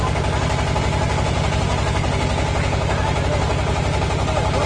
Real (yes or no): yes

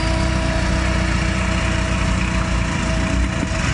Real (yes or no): yes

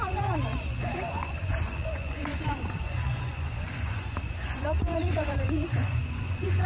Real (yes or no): no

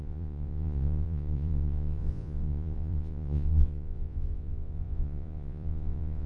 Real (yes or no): no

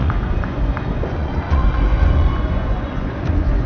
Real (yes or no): no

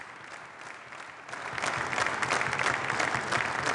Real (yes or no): yes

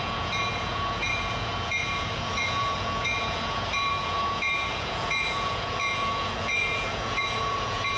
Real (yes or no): no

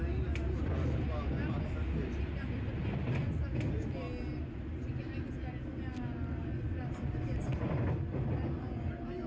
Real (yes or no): yes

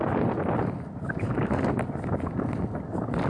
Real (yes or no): yes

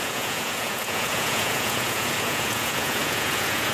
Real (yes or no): no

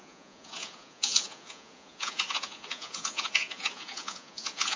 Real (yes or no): no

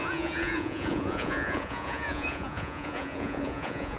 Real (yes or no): no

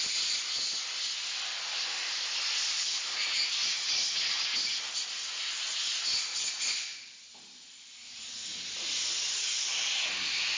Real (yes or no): yes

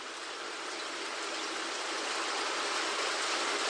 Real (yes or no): yes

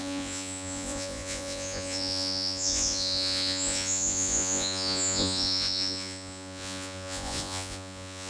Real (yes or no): no